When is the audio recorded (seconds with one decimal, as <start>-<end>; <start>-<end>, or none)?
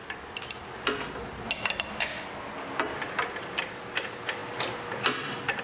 0.0-5.6